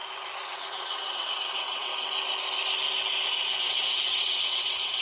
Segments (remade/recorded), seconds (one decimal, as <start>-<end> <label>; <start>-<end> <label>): 0.0-0.5 recorded; 0.5-1.9 remade; 1.9-3.6 recorded; 3.6-5.0 remade